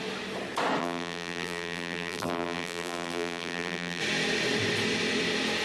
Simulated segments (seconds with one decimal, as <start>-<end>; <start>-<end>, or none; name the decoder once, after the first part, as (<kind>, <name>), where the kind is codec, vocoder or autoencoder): 0.8-4.0 (vocoder, BigVGAN v2)